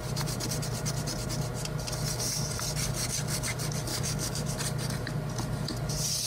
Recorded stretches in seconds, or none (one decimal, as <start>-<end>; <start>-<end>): 0.0-3.9; 4.6-6.3